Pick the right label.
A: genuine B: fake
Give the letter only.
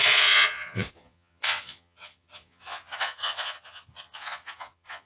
B